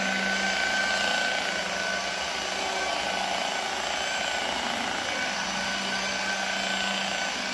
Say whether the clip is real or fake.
real